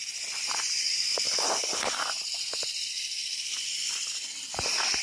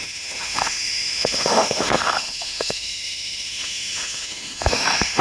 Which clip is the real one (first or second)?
first